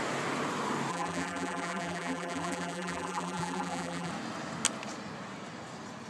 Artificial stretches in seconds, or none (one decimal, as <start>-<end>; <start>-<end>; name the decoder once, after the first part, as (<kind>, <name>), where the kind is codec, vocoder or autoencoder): 0.9-4.1 (vocoder, BigVGAN v2)